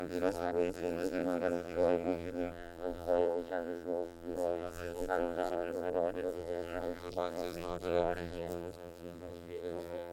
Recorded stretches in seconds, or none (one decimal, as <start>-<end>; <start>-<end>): none